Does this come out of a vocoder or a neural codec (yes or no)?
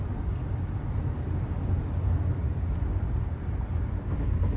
no